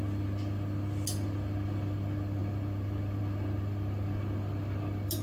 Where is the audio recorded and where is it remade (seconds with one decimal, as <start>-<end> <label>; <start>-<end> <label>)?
0.0-5.2 recorded